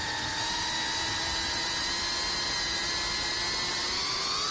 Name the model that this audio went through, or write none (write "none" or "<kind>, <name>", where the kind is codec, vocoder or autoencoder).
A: none